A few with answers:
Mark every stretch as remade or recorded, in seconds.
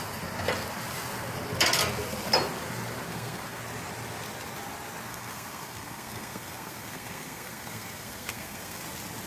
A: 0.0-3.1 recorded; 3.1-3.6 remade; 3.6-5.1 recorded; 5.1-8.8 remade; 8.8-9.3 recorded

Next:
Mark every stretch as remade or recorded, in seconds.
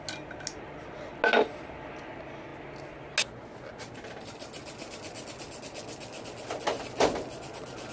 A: 0.0-7.9 recorded